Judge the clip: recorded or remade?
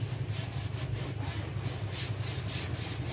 recorded